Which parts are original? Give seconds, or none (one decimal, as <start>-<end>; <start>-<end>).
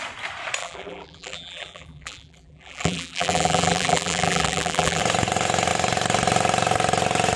0.0-0.6; 5.0-7.4